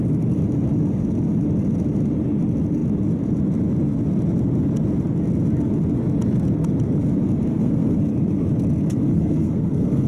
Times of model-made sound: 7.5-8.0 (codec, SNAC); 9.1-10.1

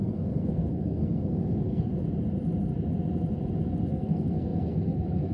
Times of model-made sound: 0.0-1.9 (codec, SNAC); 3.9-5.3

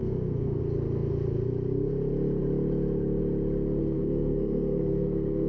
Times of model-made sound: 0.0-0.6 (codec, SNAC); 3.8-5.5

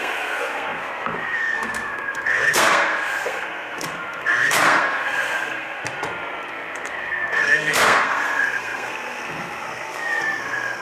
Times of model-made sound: 0.0-5.8 (codec, SNAC); 6.5-10.8

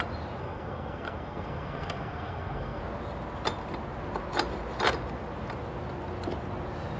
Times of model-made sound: 0.4-2.8 (codec, SNAC)

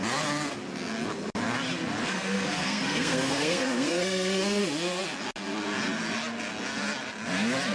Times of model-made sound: 2.0-4.6 (codec, SNAC)

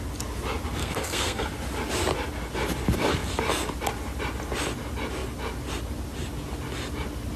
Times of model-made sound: 0.8-1.5 (codec, SNAC)

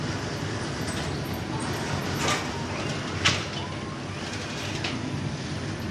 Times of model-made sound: none